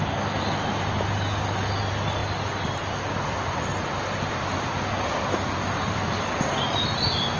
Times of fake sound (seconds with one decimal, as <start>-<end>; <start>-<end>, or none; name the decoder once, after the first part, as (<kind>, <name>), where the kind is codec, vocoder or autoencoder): none